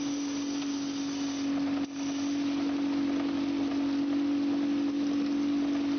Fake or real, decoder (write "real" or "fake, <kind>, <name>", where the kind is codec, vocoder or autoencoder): real